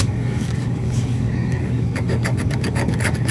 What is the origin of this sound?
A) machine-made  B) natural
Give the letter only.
A